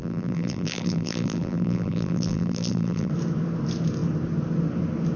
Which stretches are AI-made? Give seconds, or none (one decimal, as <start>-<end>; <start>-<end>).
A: 0.0-3.1

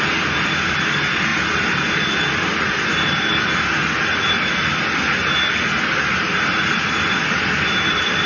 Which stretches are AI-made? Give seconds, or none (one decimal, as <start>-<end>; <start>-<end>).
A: 1.3-3.7